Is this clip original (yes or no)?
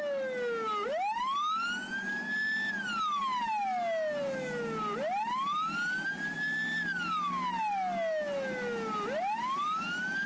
yes